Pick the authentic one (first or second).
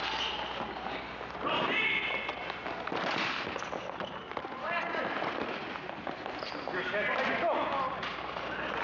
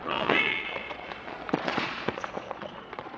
first